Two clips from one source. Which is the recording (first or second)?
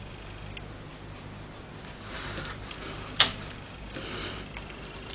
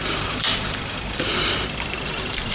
first